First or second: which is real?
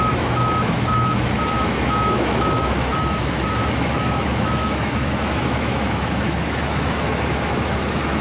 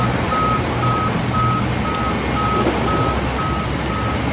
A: second